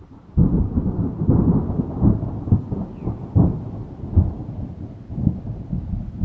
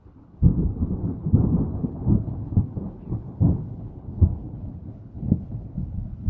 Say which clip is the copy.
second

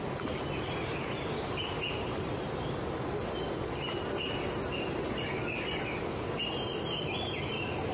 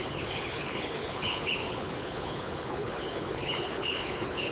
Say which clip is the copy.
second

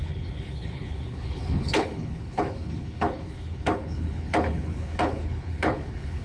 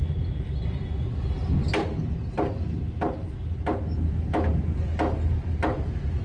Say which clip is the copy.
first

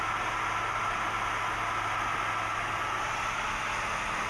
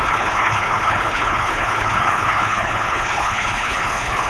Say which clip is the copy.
second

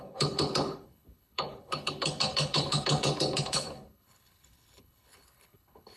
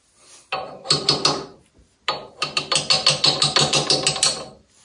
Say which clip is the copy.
first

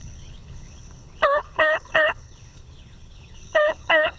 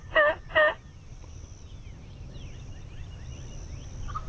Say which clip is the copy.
first